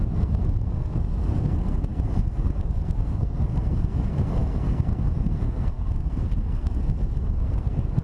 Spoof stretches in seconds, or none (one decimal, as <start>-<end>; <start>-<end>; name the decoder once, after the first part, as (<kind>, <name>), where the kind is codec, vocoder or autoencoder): 0.0-8.0 (codec, SNAC)